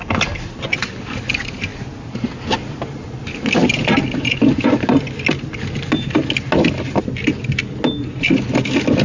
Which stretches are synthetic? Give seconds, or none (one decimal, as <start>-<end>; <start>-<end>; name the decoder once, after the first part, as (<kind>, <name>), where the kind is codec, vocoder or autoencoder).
none